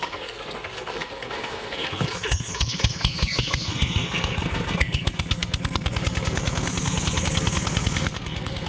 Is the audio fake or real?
fake